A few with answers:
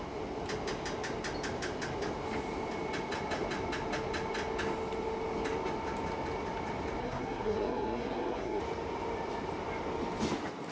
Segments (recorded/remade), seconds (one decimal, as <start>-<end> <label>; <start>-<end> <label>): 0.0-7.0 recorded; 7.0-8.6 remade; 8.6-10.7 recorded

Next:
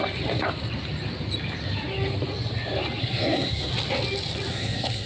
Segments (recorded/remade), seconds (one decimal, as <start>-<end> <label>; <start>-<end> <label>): 0.0-3.0 recorded; 3.0-3.7 remade; 3.7-4.5 recorded; 4.5-5.1 remade

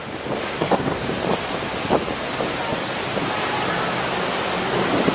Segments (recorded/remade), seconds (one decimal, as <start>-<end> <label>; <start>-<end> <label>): 0.0-0.5 recorded; 0.5-1.0 remade; 1.0-5.1 recorded

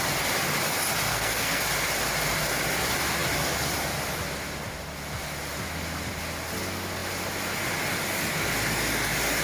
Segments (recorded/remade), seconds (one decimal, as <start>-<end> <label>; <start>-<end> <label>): 0.0-1.1 recorded; 1.1-1.6 remade; 1.6-9.4 recorded